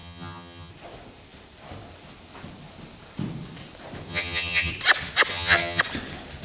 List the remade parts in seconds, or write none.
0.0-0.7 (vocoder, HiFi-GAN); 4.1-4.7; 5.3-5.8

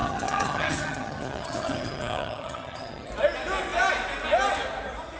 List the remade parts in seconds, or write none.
0.0-3.1 (vocoder, HiFi-GAN)

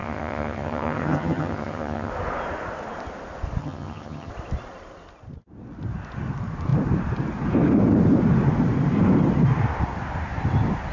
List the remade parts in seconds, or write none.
0.0-2.1 (vocoder, HiFi-GAN); 3.6-4.3